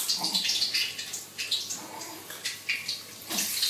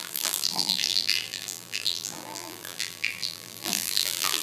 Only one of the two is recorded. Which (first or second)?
first